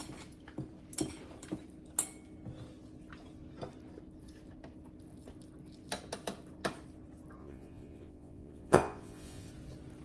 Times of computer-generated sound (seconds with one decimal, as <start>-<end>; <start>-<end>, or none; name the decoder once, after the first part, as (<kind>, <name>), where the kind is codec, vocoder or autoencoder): 7.4-9.5 (vocoder, Vocos)